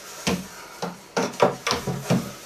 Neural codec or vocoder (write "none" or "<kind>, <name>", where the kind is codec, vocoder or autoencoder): none